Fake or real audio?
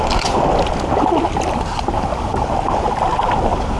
real